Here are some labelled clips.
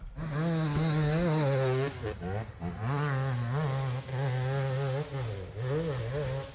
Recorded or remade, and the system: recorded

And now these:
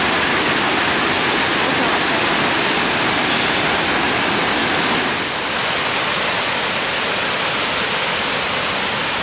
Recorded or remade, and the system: recorded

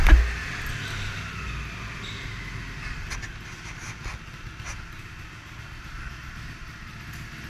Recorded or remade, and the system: recorded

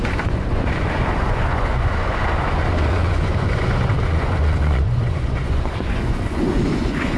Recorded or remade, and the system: remade, vocoder, Vocos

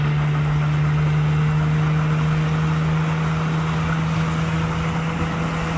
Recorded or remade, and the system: recorded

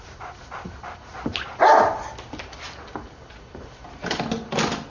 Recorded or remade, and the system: recorded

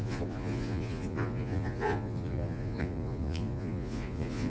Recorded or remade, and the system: remade, vocoder, Vocos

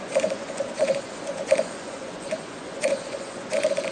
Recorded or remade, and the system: remade, vocoder, Vocos